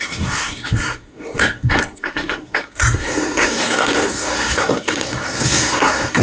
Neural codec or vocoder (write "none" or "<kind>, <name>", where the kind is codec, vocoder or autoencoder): codec, SNAC